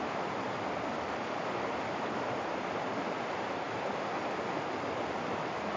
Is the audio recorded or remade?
recorded